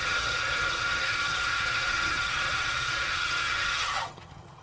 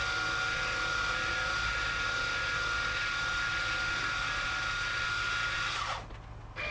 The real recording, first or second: second